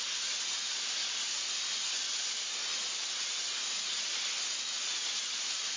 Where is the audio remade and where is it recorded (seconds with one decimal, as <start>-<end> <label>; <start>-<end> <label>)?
0.0-1.0 remade; 1.0-4.5 recorded; 4.5-5.8 remade